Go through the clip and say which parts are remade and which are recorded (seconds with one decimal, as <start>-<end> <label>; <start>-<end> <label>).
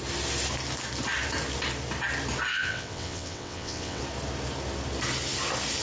0.0-2.5 recorded; 2.5-4.0 remade; 4.0-5.8 recorded